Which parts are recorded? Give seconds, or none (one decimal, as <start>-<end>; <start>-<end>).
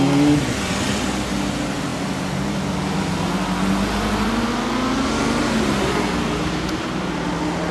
0.0-7.7